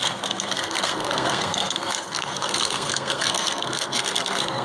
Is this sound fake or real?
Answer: fake